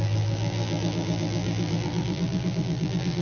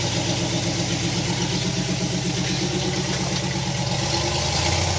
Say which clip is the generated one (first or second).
first